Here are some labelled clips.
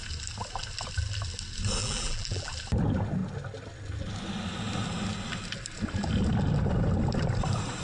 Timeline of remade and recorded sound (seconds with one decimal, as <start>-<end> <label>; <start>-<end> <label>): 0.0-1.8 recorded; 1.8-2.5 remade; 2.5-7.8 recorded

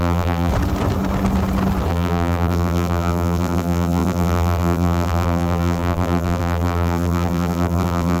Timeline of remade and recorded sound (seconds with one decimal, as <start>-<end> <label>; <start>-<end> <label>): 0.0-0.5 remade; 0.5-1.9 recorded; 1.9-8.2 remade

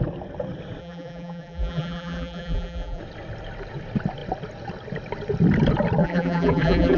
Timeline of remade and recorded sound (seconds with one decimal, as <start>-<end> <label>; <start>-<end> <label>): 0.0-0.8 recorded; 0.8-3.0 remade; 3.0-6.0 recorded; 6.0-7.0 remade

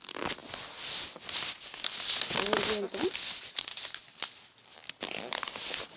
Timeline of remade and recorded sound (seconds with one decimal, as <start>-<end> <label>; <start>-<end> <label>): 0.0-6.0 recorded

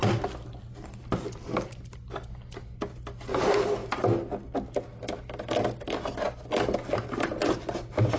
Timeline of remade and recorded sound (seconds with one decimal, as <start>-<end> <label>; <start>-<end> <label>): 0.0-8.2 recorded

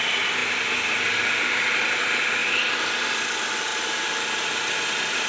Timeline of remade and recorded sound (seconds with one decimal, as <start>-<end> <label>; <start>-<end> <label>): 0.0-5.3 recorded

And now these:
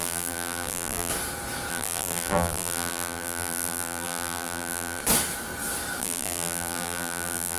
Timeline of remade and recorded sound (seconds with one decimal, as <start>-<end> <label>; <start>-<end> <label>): 0.0-1.1 remade; 1.1-1.7 recorded; 1.7-5.0 remade; 5.0-6.0 recorded; 6.0-7.6 remade